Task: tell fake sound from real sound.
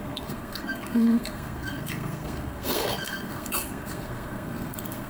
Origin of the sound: fake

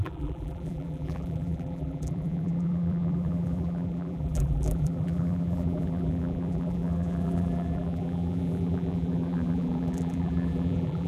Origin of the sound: fake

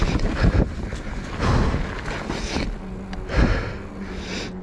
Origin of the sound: real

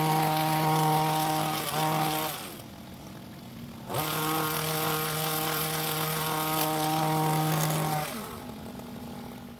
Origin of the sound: real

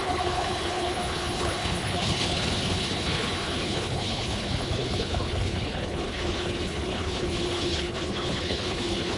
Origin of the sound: fake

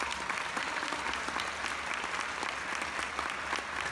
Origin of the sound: real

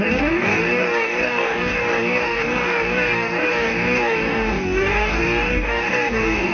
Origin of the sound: fake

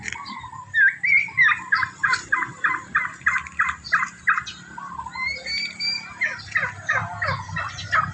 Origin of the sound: fake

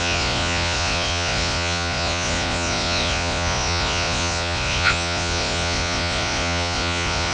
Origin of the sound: fake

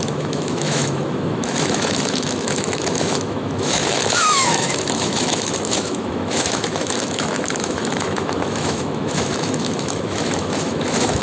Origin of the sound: fake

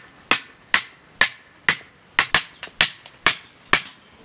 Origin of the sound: real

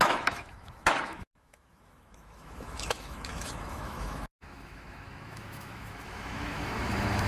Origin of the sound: fake